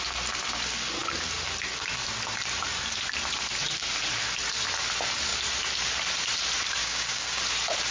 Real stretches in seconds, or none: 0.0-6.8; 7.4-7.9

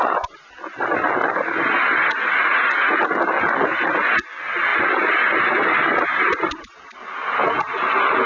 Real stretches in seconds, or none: 0.0-8.3